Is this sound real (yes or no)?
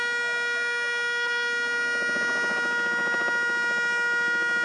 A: yes